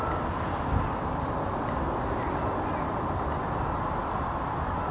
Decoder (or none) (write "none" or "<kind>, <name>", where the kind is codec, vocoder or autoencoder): none